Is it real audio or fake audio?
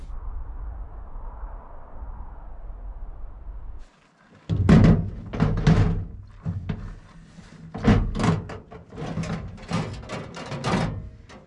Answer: real